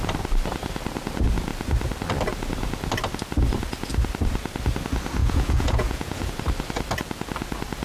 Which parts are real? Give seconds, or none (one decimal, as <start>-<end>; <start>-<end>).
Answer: 0.0-5.2; 6.3-7.8